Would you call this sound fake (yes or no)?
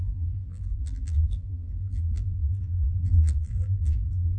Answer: yes